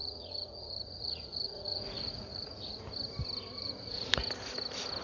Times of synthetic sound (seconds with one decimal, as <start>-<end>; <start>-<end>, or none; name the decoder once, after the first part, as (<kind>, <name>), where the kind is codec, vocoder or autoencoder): 0.0-2.8 (vocoder, Vocos); 3.6-4.1